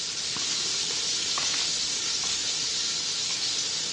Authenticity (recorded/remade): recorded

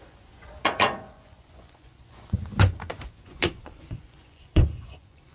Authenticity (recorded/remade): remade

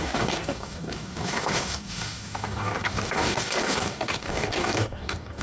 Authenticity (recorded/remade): remade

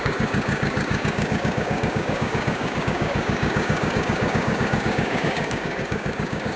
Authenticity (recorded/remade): remade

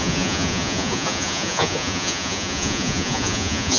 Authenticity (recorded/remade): remade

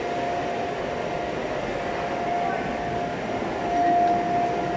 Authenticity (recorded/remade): recorded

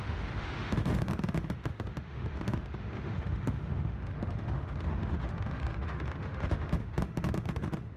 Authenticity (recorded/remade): remade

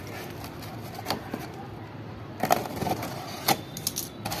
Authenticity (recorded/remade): recorded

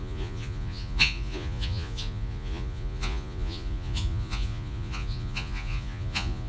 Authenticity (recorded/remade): remade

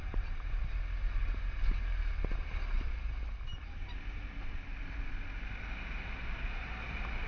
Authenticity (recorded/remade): recorded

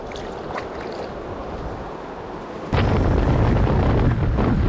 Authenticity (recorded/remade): recorded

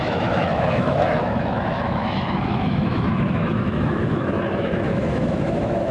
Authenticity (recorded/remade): remade